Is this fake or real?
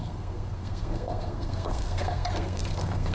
fake